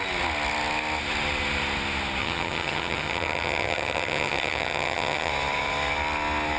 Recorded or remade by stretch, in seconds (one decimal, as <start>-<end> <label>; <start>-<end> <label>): 0.0-2.2 recorded; 2.2-5.3 remade; 5.3-6.6 recorded